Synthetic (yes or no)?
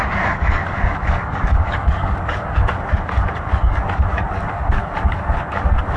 yes